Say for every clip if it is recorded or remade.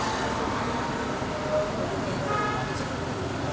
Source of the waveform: recorded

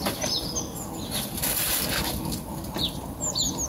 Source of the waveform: recorded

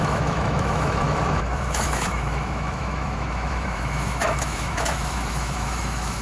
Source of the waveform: remade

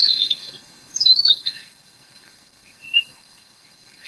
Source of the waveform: remade